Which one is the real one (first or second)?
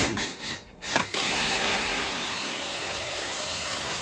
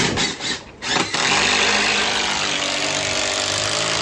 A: second